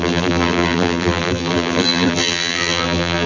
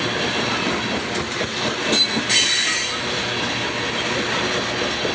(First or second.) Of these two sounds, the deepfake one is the first